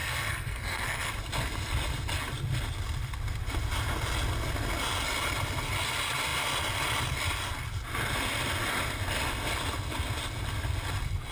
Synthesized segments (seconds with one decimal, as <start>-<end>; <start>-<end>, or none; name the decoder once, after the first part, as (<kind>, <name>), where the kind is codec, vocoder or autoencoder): 0.0-1.1 (codec, SNAC)